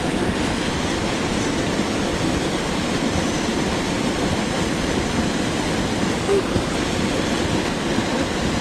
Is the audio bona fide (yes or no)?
yes